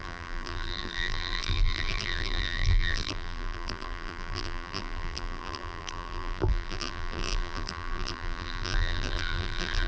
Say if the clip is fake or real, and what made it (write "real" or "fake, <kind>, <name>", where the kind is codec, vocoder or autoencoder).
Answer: fake, vocoder, BigVGAN v2